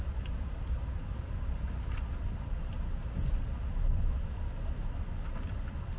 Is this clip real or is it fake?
real